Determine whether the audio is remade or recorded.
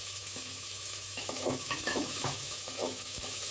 remade